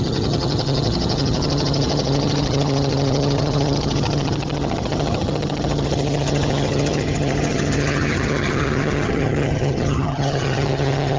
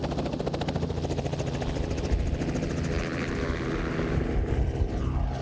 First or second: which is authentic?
second